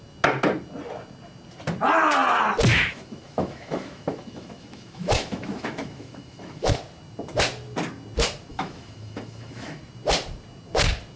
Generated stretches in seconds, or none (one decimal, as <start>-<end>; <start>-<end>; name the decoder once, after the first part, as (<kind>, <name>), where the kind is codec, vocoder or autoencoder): 2.7-6.8 (autoencoder, DAC-VAE); 8.5-9.8